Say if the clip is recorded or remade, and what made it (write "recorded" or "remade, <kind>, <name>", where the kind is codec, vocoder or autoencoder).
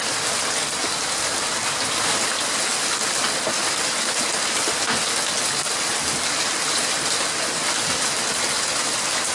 recorded